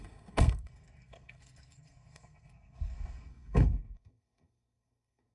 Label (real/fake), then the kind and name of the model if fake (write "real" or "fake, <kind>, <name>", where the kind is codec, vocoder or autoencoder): fake, codec, SNAC